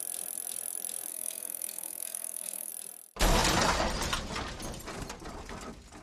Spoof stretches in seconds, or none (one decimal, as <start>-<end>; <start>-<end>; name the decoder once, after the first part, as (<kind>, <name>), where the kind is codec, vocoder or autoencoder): 1.1-2.7 (codec, SNAC)